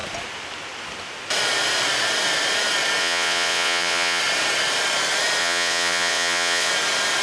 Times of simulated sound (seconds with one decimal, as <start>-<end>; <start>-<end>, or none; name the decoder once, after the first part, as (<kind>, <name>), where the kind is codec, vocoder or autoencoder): 3.0-4.2 (vocoder, Vocos); 5.4-6.7